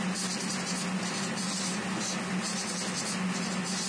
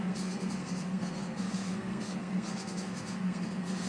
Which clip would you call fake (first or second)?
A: second